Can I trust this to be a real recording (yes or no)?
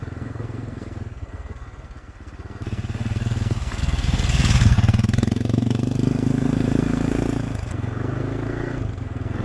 no